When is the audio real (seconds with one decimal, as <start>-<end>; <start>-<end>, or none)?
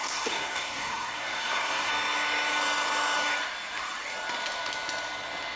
1.9-5.6